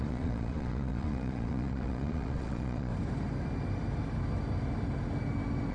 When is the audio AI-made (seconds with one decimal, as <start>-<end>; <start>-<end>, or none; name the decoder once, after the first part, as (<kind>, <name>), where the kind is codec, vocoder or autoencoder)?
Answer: 0.0-2.9 (vocoder, Vocos)

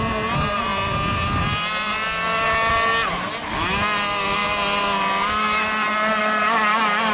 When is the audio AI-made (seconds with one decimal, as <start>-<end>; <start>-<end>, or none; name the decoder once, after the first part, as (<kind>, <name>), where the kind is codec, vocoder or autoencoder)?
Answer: none

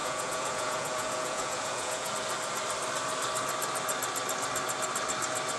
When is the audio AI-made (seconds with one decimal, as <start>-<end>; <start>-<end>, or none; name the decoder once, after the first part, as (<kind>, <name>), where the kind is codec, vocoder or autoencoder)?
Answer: 0.0-2.1 (vocoder, Vocos)